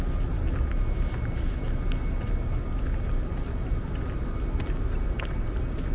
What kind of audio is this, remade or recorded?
recorded